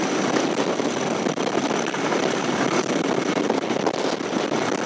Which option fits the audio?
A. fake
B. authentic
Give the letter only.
A